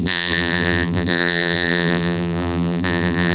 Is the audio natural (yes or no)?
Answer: no